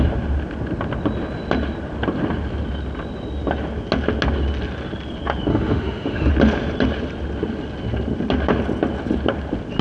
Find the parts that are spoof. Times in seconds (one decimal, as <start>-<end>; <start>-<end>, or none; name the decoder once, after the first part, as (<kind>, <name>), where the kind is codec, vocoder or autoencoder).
5.5-6.3 (autoencoder, DAC-VAE)

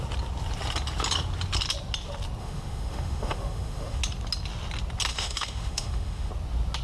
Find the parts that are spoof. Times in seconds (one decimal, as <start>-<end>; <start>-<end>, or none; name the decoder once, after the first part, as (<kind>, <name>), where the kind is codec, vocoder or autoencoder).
2.4-4.0 (autoencoder, DAC-VAE); 5.1-6.3